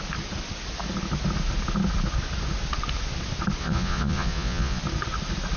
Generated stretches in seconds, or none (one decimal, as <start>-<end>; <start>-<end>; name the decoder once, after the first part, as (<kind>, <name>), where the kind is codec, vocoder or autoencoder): 3.6-4.8 (vocoder, Vocos)